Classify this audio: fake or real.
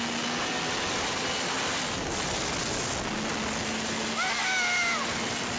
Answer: real